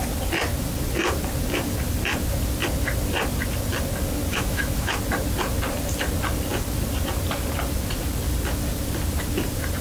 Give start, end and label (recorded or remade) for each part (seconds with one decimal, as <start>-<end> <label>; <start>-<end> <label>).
0.0-4.3 recorded; 4.3-4.9 remade; 4.9-9.8 recorded